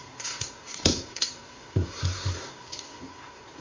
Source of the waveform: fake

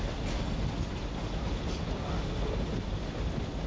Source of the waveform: real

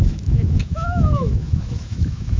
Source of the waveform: fake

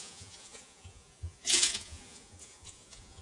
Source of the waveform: fake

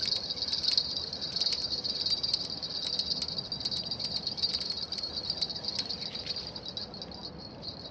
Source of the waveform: real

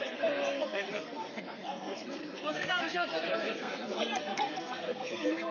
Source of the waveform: fake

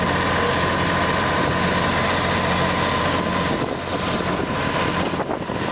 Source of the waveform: real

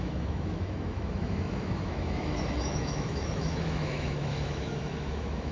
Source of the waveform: fake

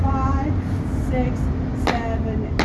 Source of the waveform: real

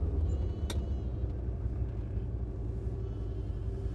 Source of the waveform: real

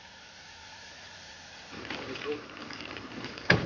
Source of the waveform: fake